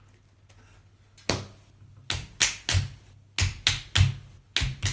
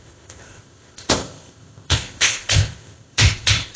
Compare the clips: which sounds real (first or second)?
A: first